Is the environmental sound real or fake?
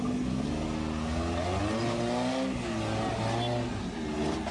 real